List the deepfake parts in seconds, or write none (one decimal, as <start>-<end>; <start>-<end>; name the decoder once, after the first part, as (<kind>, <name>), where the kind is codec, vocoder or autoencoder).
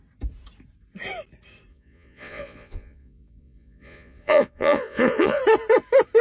1.7-5.4 (vocoder, Vocos)